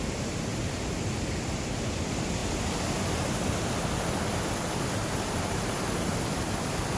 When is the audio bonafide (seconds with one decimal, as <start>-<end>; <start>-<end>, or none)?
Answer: 0.0-0.5; 1.1-7.0